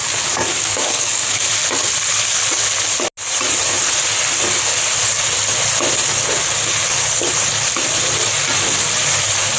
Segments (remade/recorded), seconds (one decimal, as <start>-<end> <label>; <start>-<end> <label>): 0.0-1.5 remade; 1.5-9.6 recorded